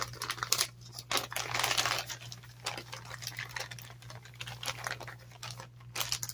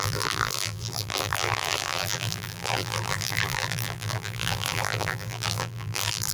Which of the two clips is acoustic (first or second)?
first